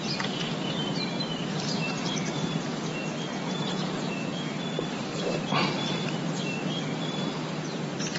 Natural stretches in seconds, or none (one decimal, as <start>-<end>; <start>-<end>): 0.0-3.3; 4.5-8.2

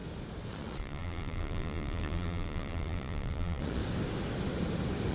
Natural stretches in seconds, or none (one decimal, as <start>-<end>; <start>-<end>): 0.0-0.5; 3.8-5.1